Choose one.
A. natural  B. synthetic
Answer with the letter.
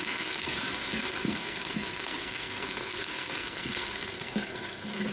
B